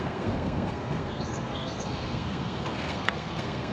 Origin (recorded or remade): remade